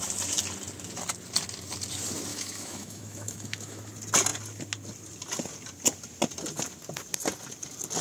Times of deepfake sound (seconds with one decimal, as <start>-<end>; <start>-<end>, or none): 2.3-3.8